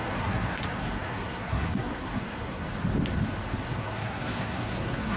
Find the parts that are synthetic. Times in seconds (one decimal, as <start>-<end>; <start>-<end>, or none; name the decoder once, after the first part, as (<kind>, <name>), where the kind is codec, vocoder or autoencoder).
0.0-2.6 (codec, SNAC); 3.6-5.2